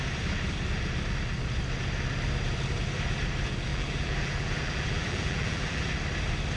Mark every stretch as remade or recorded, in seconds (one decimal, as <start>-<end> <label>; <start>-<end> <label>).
0.0-3.7 recorded; 3.7-5.9 remade; 5.9-6.6 recorded